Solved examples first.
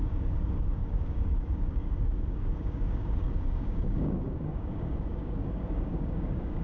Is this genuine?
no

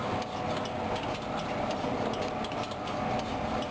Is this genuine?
yes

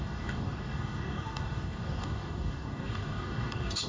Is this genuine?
no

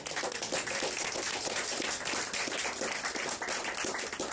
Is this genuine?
yes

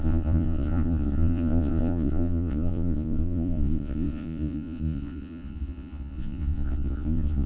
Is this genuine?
no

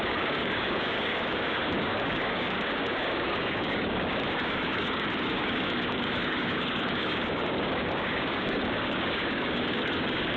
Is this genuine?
no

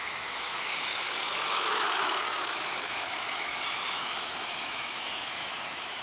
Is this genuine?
no